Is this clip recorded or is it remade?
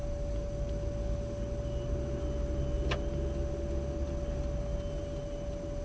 recorded